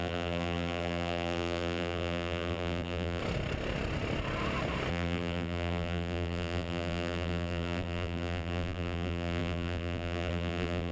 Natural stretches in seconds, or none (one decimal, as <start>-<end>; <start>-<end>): 3.2-4.9